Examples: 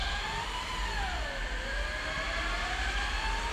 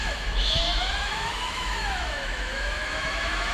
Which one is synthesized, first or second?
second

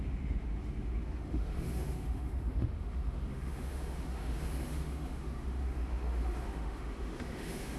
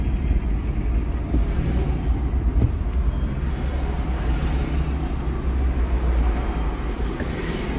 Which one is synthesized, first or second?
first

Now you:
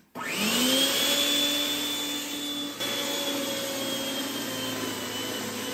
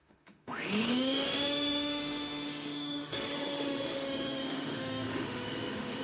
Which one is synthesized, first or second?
second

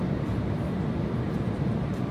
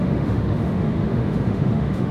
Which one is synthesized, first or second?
second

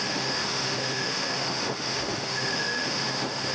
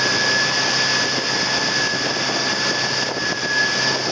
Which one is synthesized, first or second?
first